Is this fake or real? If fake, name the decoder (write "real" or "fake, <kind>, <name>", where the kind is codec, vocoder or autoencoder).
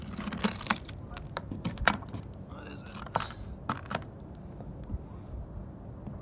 real